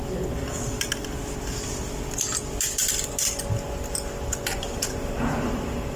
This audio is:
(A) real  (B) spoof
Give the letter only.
A